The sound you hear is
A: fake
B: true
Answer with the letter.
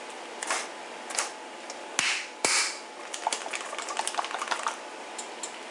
B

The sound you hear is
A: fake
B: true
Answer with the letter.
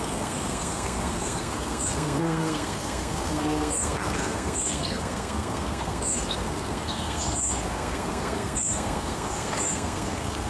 A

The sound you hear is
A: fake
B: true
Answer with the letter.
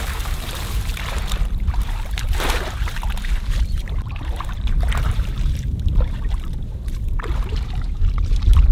A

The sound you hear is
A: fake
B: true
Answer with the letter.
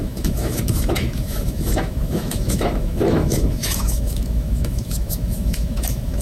A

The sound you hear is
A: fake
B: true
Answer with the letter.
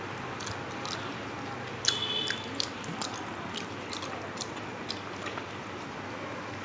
B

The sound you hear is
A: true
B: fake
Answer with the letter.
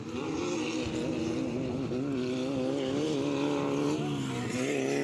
A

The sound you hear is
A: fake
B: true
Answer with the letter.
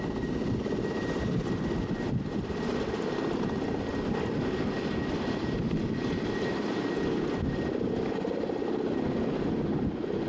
B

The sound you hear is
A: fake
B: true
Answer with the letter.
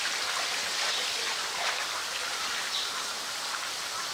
B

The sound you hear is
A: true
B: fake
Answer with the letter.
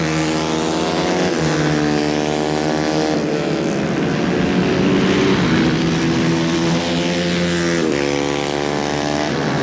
A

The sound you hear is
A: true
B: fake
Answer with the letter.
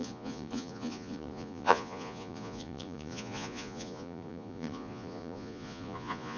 B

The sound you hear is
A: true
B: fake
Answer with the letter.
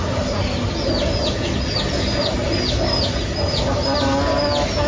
A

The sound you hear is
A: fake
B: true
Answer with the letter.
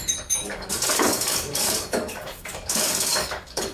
A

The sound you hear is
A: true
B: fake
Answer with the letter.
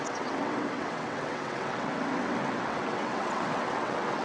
B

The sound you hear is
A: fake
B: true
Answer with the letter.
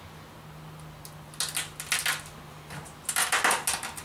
B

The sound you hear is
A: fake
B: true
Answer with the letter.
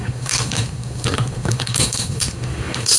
A